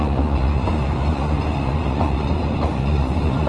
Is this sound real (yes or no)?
no